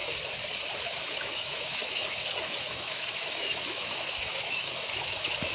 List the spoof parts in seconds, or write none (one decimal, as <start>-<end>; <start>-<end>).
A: 0.8-5.5